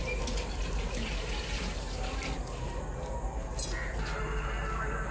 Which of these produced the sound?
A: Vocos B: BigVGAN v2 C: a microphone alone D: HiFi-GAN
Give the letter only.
C